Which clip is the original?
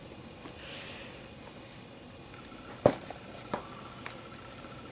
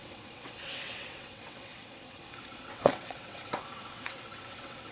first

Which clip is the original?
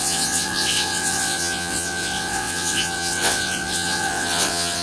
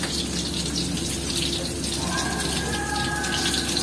second